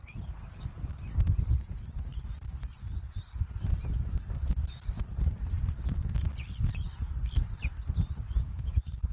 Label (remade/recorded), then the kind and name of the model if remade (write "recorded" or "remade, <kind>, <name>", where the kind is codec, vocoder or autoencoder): recorded